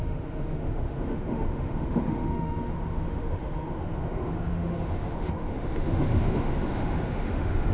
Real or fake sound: fake